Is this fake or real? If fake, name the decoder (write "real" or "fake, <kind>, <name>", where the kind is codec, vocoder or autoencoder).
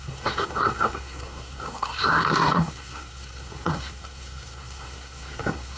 fake, codec, SNAC